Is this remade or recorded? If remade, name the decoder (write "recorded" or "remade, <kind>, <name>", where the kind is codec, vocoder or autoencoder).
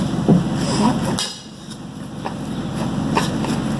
recorded